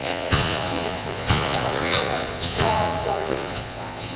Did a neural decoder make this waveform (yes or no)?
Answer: yes